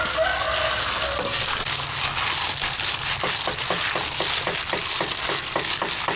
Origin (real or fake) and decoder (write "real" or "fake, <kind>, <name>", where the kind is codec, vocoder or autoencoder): real